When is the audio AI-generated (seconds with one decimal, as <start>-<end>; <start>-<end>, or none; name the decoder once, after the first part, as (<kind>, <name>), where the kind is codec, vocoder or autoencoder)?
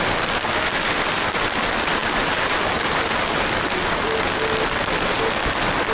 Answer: none